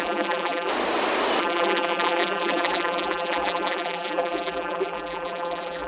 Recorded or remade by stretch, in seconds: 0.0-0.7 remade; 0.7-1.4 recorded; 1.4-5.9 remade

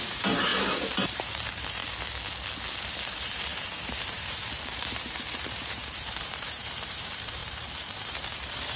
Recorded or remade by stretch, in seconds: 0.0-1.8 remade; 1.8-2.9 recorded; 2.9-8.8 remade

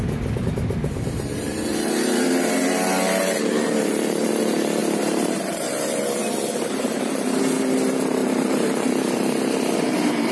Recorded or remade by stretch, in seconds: 0.0-0.8 recorded; 0.8-4.3 remade; 4.3-4.8 recorded; 4.8-7.4 remade; 7.4-8.2 recorded; 8.2-9.1 remade; 9.1-10.3 recorded

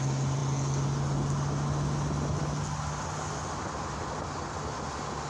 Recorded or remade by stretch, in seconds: 0.0-5.3 recorded

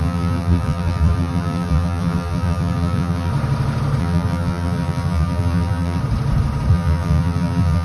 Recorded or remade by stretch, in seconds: 0.0-3.3 remade; 3.3-4.0 recorded; 4.0-6.0 remade; 6.0-6.7 recorded; 6.7-7.8 remade